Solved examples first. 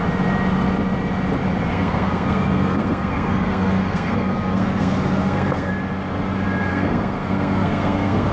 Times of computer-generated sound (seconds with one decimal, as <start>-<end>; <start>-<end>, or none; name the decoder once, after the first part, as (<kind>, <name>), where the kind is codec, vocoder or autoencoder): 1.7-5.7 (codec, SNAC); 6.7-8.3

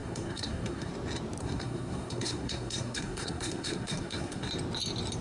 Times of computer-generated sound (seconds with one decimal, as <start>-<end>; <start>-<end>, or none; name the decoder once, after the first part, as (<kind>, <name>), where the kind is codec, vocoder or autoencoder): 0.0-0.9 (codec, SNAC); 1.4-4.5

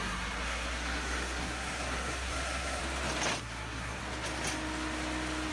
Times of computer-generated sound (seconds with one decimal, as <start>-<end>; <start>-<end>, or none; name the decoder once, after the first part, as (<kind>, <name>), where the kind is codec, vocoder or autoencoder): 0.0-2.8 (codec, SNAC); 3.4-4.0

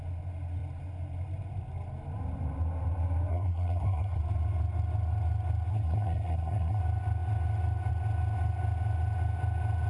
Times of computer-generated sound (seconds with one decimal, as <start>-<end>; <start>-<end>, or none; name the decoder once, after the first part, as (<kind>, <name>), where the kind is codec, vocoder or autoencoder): 3.3-4.2 (codec, SNAC); 5.7-6.8

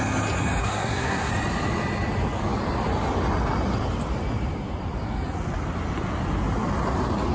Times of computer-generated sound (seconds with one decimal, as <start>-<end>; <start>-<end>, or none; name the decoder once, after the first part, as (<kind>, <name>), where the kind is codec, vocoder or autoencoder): 0.6-1.3 (codec, SNAC)

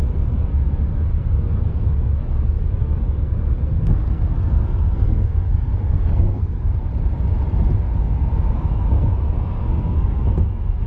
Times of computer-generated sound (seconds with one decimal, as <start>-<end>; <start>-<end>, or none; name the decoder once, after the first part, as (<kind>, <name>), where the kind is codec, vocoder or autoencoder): 0.0-6.9 (codec, SNAC); 8.0-10.9